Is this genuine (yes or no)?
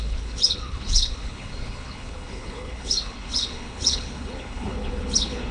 no